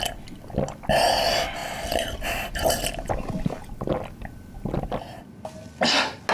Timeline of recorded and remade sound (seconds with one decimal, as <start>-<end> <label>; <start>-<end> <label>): 0.0-6.3 recorded